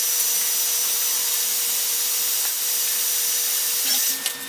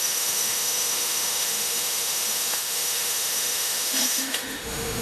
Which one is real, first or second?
first